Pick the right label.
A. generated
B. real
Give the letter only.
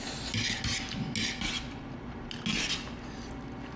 B